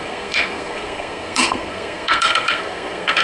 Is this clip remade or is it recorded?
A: remade